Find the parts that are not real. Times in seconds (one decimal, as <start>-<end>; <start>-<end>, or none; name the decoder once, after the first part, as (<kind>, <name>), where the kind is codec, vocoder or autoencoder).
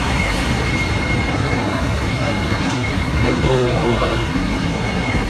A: 0.0-0.7 (codec, SNAC); 1.3-5.3